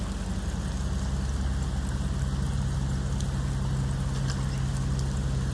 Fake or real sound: real